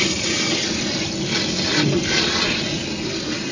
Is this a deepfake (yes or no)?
no